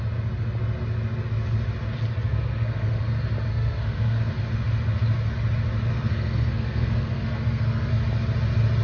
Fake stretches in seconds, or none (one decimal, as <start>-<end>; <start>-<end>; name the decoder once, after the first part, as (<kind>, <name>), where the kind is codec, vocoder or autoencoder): 2.3-3.0 (codec, SNAC); 3.5-4.3; 5.9-7.9